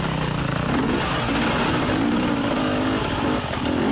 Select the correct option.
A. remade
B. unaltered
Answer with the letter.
B